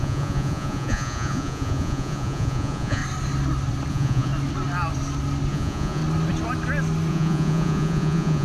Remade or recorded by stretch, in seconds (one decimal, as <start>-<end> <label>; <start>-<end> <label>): 0.0-3.0 remade; 3.0-3.9 recorded; 3.9-4.3 remade; 4.3-5.5 recorded; 5.5-6.0 remade; 6.0-7.1 recorded; 7.1-8.4 remade